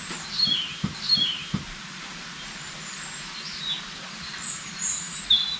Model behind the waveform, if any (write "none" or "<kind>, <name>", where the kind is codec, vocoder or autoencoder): vocoder, BigVGAN v2